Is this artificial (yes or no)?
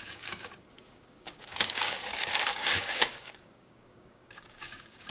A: yes